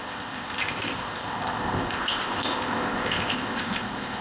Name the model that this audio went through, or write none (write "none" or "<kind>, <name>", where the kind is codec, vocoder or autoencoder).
codec, ZipCodec